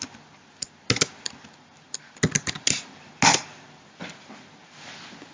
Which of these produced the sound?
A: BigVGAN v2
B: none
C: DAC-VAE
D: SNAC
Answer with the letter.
B